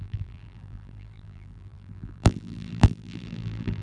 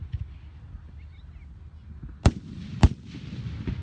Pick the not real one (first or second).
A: first